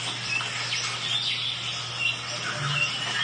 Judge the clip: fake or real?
real